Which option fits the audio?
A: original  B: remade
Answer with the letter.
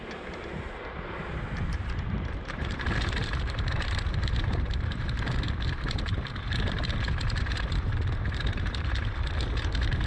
B